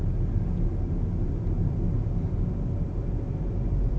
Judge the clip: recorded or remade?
recorded